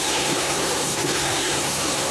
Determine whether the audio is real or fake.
fake